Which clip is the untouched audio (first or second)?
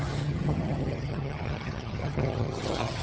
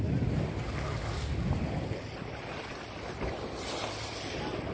second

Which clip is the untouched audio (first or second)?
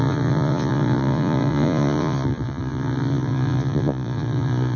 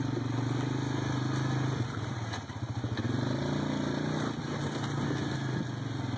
second